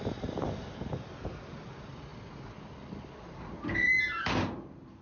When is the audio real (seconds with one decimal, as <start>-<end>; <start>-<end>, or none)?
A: 0.0-5.0